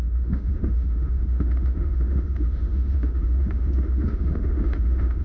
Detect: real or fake fake